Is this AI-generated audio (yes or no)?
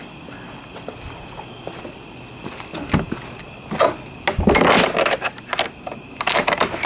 no